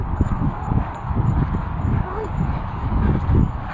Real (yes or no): no